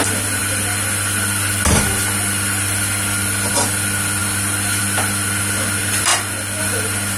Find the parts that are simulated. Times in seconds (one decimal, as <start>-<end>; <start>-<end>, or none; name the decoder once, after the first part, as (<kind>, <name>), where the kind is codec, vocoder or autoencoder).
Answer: none